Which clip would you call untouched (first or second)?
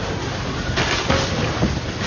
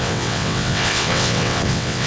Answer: first